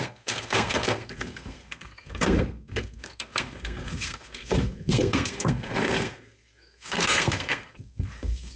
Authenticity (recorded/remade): remade